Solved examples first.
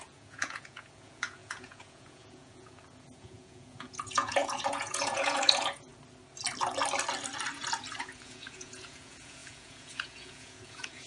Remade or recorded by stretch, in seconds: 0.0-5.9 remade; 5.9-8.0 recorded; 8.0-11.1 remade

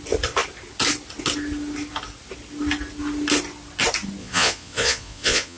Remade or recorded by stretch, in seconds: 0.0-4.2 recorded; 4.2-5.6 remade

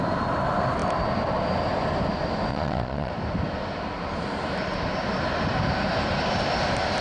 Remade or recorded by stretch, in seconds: 0.0-2.5 recorded; 2.5-3.1 remade; 3.1-7.0 recorded